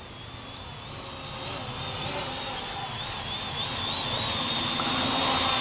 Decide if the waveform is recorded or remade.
recorded